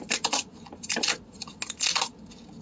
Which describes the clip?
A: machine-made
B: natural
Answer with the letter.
B